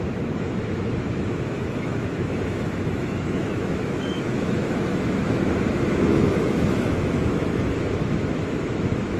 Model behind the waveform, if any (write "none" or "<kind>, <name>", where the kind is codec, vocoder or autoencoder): autoencoder, DAC-VAE